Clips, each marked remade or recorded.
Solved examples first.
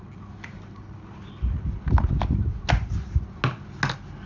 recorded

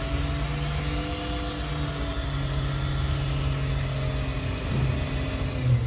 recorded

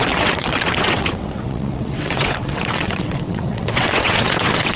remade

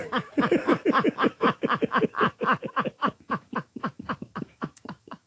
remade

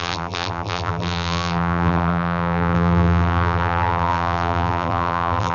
remade